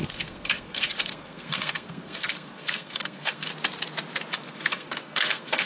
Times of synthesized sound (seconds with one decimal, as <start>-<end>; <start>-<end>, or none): 0.0-3.5; 4.5-5.7